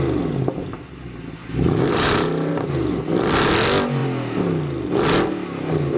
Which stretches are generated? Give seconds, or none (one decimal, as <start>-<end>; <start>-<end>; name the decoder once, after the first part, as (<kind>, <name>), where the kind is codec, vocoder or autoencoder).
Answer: 1.4-2.5 (vocoder, BigVGAN v2)